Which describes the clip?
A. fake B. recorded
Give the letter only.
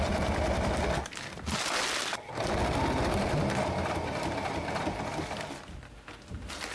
B